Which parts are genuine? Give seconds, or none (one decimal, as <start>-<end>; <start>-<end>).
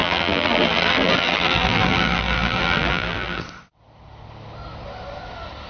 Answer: 3.4-5.7